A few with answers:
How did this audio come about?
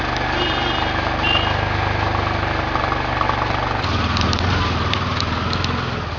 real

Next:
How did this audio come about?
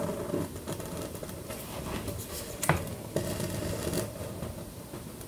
real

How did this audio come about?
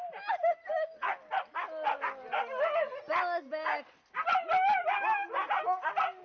real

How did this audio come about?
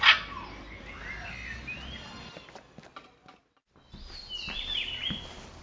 real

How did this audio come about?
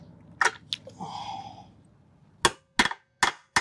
real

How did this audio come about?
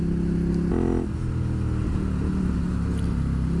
real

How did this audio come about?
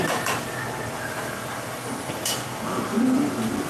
fake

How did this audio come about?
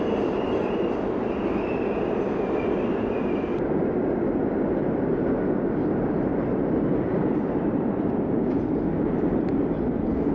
real